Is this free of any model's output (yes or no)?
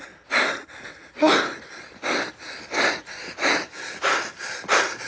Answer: yes